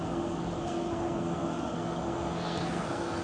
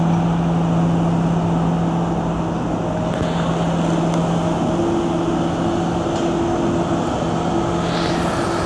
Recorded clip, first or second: second